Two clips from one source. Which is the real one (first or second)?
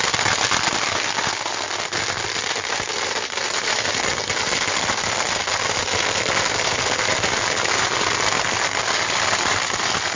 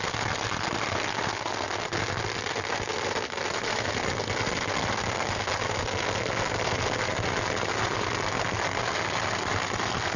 second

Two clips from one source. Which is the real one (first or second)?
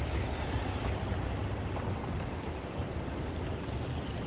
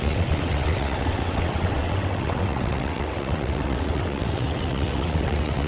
first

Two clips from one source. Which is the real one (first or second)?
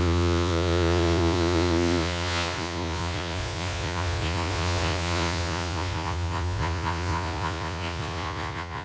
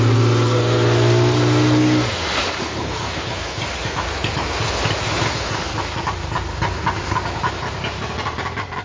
second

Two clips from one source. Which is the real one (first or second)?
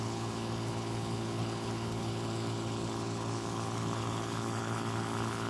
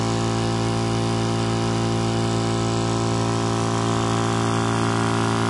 second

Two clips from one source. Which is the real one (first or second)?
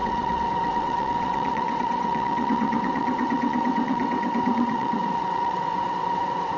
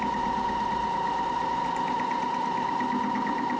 second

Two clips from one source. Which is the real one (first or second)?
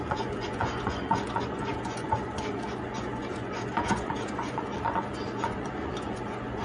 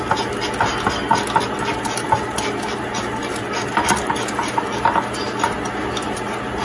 second